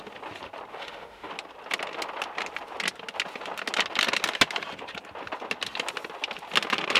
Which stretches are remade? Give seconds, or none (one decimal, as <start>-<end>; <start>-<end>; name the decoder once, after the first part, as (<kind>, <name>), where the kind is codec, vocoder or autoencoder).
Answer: 0.7-1.3 (autoencoder, DAC-VAE)